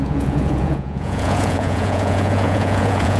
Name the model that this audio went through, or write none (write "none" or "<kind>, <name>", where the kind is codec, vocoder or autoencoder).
vocoder, Vocos